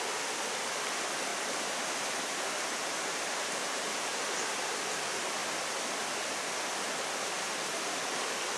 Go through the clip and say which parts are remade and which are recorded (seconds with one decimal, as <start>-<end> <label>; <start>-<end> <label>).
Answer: 0.0-1.3 recorded; 1.3-4.3 remade; 4.3-8.6 recorded